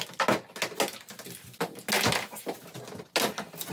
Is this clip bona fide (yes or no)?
yes